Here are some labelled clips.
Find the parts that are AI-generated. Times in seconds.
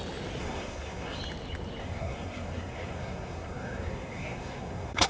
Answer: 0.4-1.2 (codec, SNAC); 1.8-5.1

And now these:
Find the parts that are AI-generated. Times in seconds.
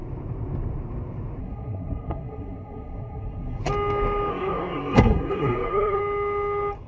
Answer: 1.4-3.6 (codec, SNAC); 4.3-6.0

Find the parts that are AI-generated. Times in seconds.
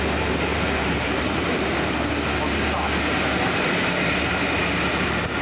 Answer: 0.5-1.6 (vocoder, BigVGAN v2)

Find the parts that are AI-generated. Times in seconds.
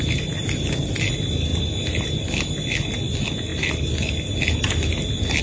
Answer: 0.4-1.1 (vocoder, BigVGAN v2); 1.5-2.2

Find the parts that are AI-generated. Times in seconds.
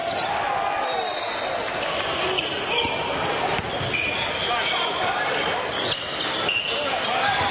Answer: none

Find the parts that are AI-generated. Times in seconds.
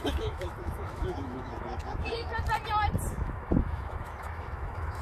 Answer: 0.0-2.3 (autoencoder, DAC-VAE); 3.1-5.0